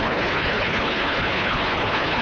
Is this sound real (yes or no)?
no